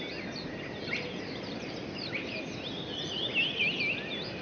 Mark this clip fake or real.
real